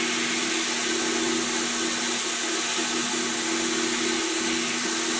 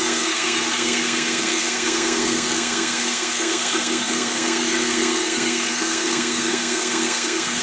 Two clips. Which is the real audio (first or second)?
first